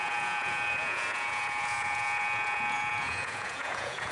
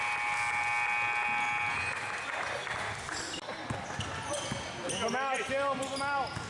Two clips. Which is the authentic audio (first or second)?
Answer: second